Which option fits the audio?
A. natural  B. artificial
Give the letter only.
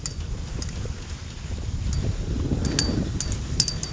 A